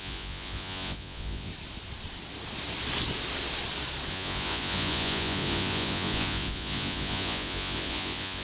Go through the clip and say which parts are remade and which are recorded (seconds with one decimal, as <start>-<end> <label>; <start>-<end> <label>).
0.0-1.5 remade; 1.5-4.1 recorded; 4.1-8.4 remade